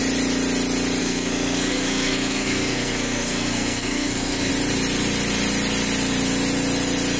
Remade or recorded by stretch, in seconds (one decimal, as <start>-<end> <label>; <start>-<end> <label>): 0.0-1.0 recorded; 1.0-4.5 remade; 4.5-7.2 recorded